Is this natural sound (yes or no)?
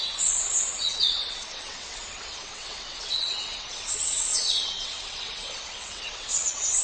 no